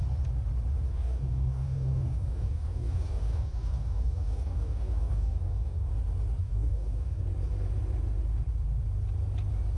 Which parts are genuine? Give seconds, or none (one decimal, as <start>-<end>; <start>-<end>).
0.0-0.9; 5.9-6.4; 7.2-9.8